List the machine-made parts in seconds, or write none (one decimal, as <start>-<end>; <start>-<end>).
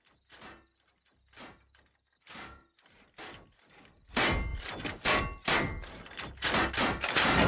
none